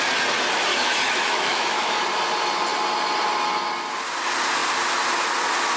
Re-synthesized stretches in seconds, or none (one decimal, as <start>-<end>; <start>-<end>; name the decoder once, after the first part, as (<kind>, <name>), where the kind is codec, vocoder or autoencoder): 0.7-2.0 (autoencoder, DAC-VAE)